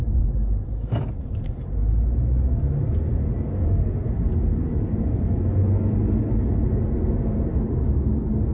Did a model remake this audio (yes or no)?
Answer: no